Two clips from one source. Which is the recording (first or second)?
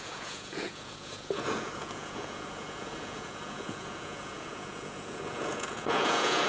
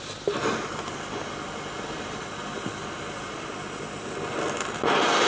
second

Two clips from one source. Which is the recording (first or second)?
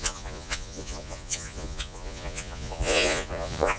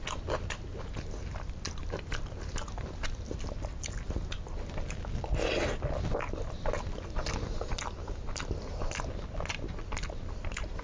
second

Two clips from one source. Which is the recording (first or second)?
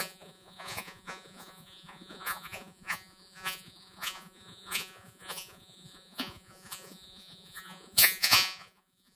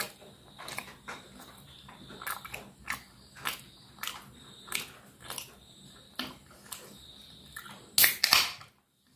second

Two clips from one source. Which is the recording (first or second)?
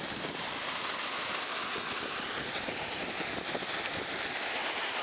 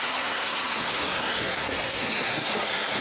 first